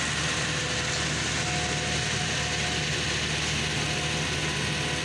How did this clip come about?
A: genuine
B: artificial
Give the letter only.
A